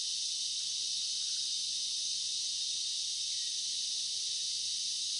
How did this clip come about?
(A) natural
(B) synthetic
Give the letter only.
A